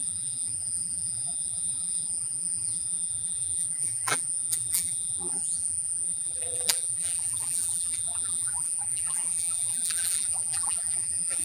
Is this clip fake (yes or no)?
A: yes